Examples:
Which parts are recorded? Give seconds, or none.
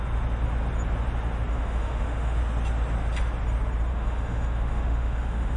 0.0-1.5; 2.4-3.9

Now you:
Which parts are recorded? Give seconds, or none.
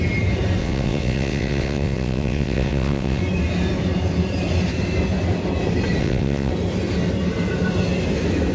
0.0-0.6; 3.2-6.0; 6.5-8.5